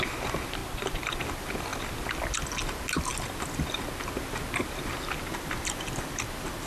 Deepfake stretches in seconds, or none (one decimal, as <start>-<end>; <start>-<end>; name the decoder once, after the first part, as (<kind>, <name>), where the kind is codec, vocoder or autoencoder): 0.6-1.2 (vocoder, BigVGAN v2)